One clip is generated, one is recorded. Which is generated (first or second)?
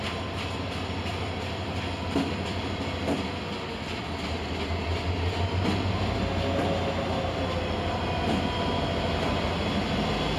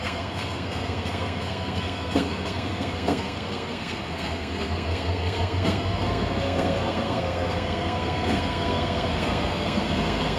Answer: second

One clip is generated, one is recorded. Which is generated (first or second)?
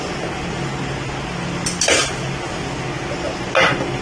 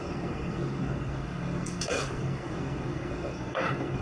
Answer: second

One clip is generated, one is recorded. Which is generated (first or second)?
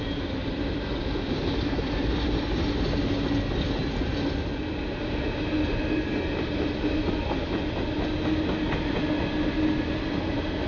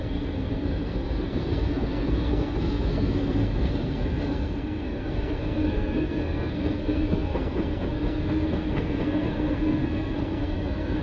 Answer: second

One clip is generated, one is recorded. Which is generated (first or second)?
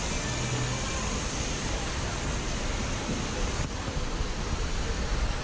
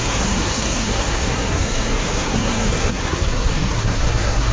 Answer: second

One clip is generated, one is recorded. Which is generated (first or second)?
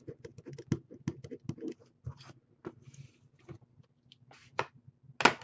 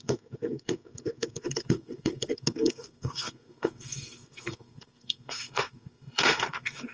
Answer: second